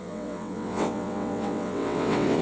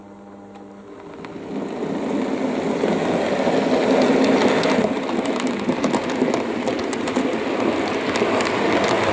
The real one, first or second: second